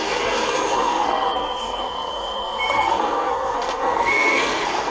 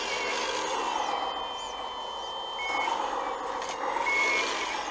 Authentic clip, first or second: second